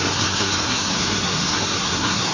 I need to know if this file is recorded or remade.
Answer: remade